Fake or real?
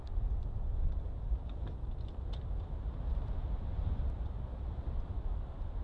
real